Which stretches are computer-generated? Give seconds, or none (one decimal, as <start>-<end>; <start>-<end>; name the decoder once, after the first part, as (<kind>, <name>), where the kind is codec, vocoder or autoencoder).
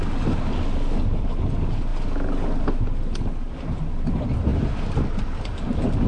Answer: none